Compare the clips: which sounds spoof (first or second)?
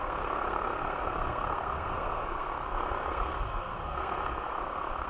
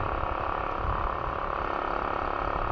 first